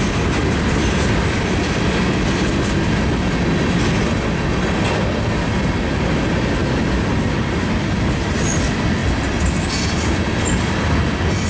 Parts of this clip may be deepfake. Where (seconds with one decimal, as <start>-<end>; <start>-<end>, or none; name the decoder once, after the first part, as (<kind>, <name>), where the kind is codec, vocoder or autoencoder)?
none